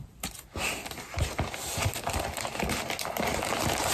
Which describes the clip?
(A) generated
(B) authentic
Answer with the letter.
B